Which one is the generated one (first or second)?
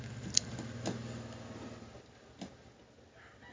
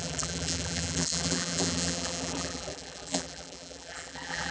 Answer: second